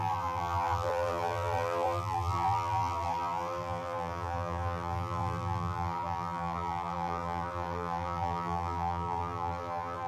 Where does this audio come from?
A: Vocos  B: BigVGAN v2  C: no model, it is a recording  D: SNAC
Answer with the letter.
B